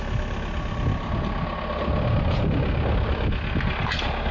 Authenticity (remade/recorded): recorded